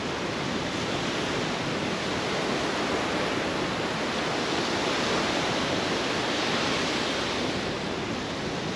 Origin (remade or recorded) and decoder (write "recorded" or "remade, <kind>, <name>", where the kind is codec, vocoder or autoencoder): recorded